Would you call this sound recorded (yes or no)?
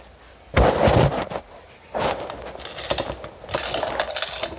yes